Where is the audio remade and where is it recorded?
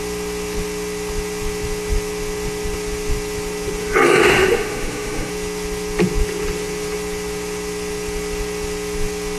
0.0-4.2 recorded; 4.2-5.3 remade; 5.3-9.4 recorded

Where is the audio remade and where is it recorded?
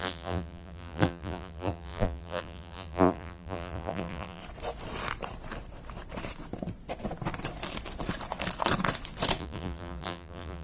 0.0-4.4 remade; 4.4-9.4 recorded; 9.4-10.6 remade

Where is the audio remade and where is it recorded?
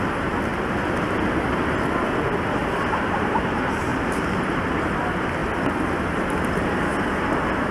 0.0-2.6 recorded; 2.6-3.3 remade; 3.3-3.9 recorded; 3.9-4.4 remade; 4.4-7.7 recorded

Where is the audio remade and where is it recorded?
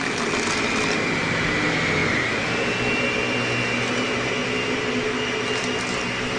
0.0-6.4 recorded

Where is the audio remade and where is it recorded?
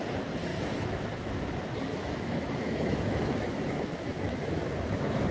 0.0-0.5 recorded; 0.5-1.5 remade; 1.5-1.9 recorded; 1.9-5.3 remade